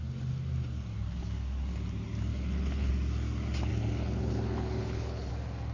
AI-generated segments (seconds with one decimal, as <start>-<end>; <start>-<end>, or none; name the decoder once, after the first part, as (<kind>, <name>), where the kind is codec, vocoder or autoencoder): 2.3-2.9 (codec, HILCodec); 3.7-5.3